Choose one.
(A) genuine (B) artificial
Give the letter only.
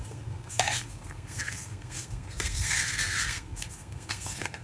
B